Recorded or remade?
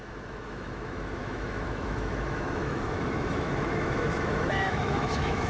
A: remade